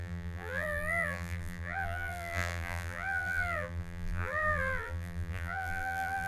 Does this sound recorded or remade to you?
remade